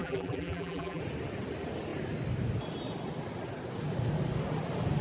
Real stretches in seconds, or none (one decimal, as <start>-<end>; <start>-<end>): 1.0-5.0